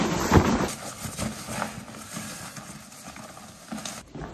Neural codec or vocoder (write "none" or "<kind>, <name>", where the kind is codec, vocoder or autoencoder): none